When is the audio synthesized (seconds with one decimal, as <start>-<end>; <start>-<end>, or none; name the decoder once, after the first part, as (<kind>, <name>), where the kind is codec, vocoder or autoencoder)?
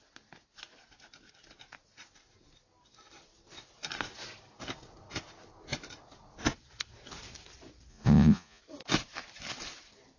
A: 7.9-8.6 (vocoder, Vocos)